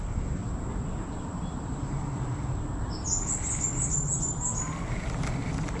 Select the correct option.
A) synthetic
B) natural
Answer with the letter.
B